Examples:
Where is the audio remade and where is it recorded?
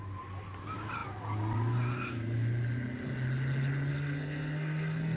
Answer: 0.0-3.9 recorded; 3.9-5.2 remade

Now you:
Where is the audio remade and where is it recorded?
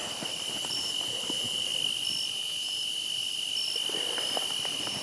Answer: 0.0-5.0 recorded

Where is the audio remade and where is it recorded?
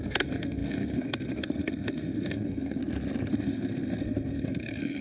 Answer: 0.0-2.8 remade; 2.8-3.3 recorded; 3.3-5.0 remade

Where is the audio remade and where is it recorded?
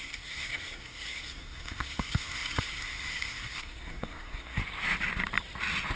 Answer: 0.0-4.6 remade; 4.6-6.0 recorded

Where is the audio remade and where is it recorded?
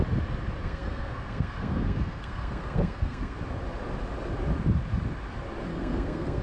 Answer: 0.0-0.6 recorded; 0.6-3.4 remade; 3.4-5.7 recorded; 5.7-6.4 remade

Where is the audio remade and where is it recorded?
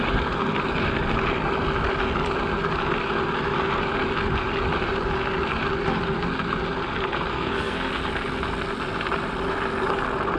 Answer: 0.0-7.3 recorded; 7.3-7.9 remade; 7.9-10.4 recorded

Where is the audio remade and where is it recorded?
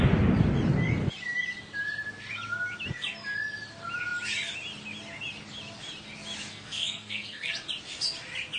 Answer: 0.0-6.5 recorded; 6.5-7.5 remade; 7.5-8.6 recorded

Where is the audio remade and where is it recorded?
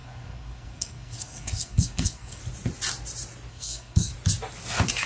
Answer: 0.0-2.4 remade; 2.4-3.5 recorded; 3.5-4.1 remade; 4.1-5.1 recorded